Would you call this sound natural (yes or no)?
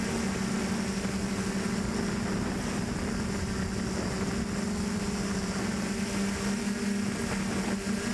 yes